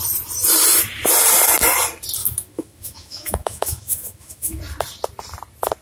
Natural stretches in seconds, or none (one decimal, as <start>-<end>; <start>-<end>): 0.0-2.2; 4.6-5.8